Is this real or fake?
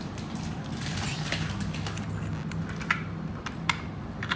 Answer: real